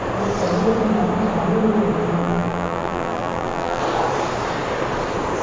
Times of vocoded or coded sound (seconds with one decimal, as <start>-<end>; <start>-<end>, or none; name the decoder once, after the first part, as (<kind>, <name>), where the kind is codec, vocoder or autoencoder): 2.2-3.8 (vocoder, BigVGAN v2)